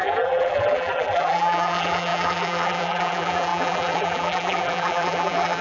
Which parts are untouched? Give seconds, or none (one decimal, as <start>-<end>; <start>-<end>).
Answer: none